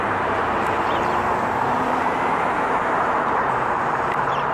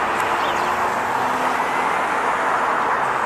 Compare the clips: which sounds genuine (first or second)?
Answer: second